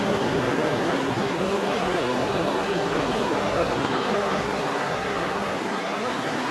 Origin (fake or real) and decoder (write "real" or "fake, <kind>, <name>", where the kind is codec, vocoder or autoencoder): fake, codec, SNAC